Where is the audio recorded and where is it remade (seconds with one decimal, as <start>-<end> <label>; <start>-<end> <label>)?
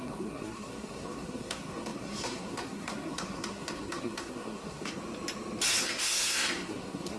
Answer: 0.0-5.0 remade; 5.0-5.8 recorded; 5.8-7.2 remade